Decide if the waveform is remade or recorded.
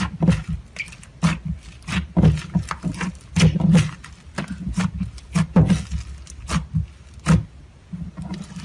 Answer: recorded